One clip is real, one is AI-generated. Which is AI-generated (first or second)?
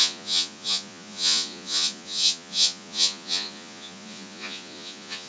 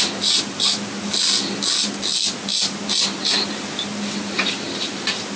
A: first